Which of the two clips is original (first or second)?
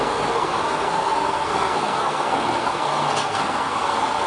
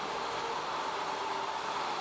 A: second